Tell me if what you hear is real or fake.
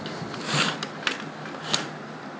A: real